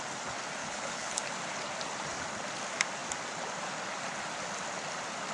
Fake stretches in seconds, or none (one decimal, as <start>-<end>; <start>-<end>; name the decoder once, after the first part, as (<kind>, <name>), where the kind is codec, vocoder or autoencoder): 0.6-1.1 (codec, HILCodec)